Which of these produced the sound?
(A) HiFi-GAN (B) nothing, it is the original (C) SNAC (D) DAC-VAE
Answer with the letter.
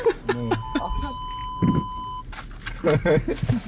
B